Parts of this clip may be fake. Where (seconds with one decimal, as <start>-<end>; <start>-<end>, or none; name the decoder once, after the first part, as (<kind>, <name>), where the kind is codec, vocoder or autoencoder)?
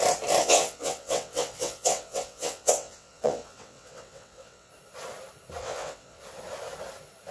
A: 0.4-4.7 (vocoder, WaveNeXt); 5.6-6.2